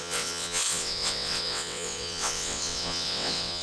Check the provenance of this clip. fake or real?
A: fake